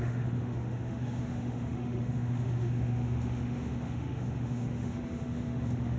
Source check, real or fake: fake